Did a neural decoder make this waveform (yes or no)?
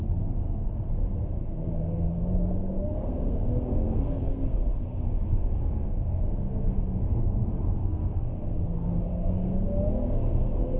yes